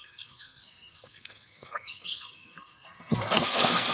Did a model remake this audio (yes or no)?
yes